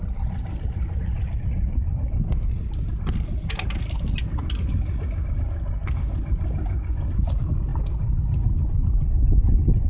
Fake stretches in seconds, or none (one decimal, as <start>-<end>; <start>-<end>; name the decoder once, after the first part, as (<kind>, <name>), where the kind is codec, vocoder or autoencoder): none